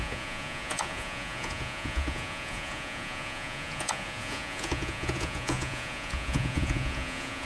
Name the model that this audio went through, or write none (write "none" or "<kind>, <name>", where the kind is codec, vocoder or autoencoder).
vocoder, Vocos